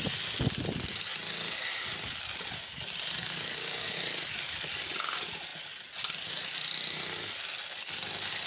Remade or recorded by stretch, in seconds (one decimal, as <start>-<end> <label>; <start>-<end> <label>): 0.0-3.2 recorded; 3.2-4.7 remade; 4.7-8.5 recorded